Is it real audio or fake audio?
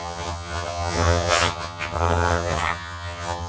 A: fake